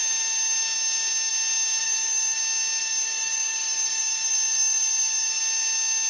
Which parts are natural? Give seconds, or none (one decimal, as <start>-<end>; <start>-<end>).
0.0-1.8; 2.4-2.8; 5.4-6.1